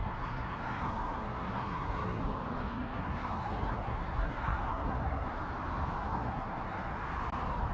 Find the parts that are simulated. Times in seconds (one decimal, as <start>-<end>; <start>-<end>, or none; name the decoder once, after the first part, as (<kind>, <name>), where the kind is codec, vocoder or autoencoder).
0.0-2.2 (codec, SNAC); 2.7-5.4; 6.0-6.9